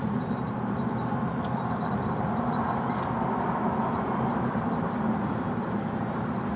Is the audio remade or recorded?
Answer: remade